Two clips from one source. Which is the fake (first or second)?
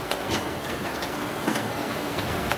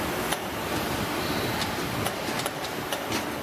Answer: first